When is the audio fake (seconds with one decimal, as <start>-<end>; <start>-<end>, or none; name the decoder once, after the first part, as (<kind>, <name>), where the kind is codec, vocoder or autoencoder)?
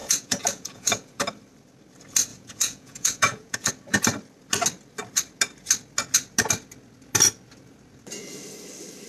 0.0-1.2 (vocoder, Vocos); 2.3-3.7